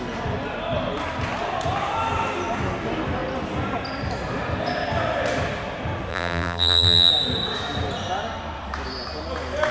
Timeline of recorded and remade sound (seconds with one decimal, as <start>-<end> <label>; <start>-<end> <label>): 0.0-6.1 recorded; 6.1-7.1 remade; 7.1-9.7 recorded

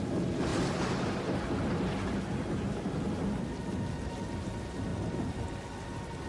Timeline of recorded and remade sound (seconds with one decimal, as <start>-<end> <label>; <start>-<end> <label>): 0.0-0.5 recorded; 0.5-1.2 remade; 1.2-4.9 recorded; 4.9-6.3 remade

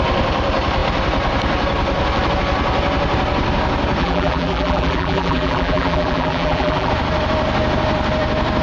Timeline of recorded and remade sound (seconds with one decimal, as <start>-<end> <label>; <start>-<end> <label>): 0.0-4.0 recorded; 4.0-6.9 remade; 6.9-8.6 recorded

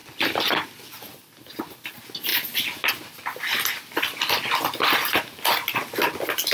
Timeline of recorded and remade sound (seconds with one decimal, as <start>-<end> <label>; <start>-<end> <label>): 0.0-6.5 recorded

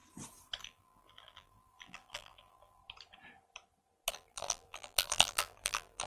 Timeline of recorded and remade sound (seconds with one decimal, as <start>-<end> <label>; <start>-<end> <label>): 0.0-0.6 recorded; 0.6-2.8 remade; 2.8-4.1 recorded; 4.1-6.1 remade